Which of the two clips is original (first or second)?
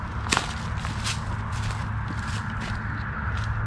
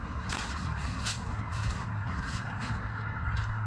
first